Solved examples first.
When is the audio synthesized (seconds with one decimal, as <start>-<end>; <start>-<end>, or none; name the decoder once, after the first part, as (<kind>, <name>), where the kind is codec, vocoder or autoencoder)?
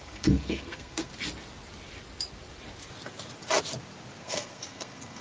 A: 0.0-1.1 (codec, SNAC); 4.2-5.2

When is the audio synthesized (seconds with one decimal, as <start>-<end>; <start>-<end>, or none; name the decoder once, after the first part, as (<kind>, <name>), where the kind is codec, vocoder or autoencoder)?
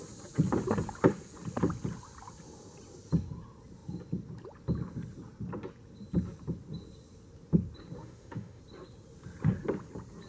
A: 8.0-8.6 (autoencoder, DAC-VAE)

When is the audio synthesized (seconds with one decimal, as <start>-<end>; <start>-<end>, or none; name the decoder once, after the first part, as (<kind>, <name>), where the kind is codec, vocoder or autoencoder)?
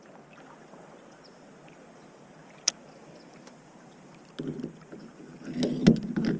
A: none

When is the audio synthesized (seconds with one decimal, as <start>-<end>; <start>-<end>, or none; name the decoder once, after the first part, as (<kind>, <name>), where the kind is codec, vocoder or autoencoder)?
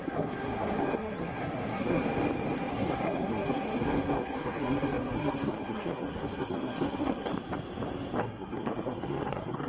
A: 0.0-2.0 (codec, SNAC); 2.7-7.3; 8.2-9.7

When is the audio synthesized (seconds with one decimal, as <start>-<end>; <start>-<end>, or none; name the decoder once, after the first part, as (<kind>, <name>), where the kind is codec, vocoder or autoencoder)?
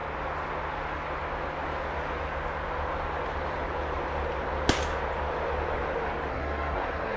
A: 6.3-7.2 (codec, SNAC)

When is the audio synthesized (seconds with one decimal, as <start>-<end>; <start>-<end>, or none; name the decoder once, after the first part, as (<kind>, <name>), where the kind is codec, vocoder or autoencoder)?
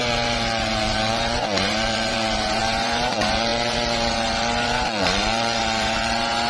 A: 0.0-6.5 (vocoder, Vocos)